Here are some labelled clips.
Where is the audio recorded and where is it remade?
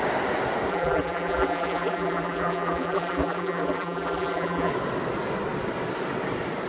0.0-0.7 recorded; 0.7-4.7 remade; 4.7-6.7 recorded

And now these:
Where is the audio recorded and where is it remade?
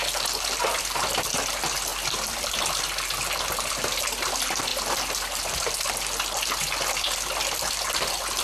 0.0-1.9 recorded; 1.9-2.8 remade; 2.8-8.4 recorded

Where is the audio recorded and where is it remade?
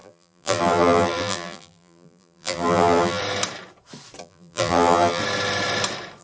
0.0-3.2 remade; 3.2-4.2 recorded; 4.2-5.2 remade; 5.2-6.2 recorded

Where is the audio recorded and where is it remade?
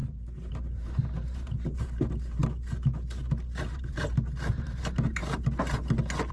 0.0-2.4 remade; 2.4-3.6 recorded; 3.6-5.2 remade; 5.2-6.3 recorded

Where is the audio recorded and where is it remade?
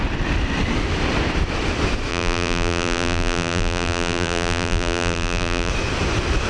0.0-2.1 recorded; 2.1-5.7 remade; 5.7-6.5 recorded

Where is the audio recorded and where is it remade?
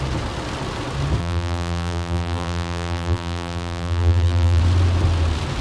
0.0-1.2 recorded; 1.2-4.6 remade; 4.6-5.6 recorded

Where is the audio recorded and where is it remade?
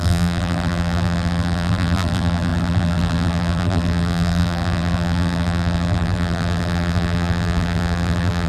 0.0-8.5 remade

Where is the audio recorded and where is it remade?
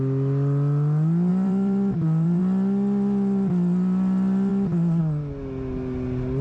0.0-1.3 recorded; 1.3-2.4 remade; 2.4-6.4 recorded